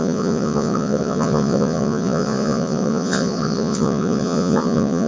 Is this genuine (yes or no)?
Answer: no